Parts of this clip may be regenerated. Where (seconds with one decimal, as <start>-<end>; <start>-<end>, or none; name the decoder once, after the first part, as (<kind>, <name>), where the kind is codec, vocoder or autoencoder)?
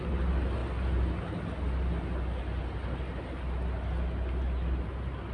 none